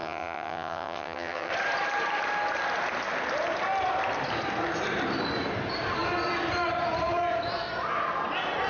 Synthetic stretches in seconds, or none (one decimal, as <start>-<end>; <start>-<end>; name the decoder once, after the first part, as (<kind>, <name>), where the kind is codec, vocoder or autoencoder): 0.0-1.5 (vocoder, HiFi-GAN)